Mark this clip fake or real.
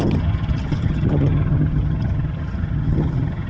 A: fake